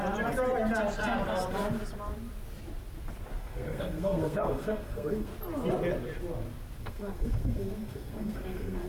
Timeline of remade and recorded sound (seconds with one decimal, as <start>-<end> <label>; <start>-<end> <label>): 0.0-3.4 recorded; 3.4-5.3 remade; 5.3-6.8 recorded; 6.8-8.9 remade